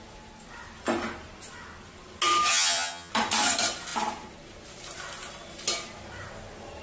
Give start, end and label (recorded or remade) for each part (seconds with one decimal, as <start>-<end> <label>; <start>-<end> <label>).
0.0-2.5 recorded; 2.5-3.1 remade; 3.1-6.8 recorded